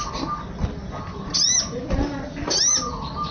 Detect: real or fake real